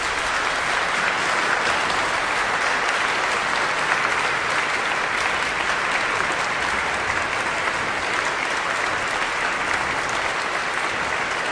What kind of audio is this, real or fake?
real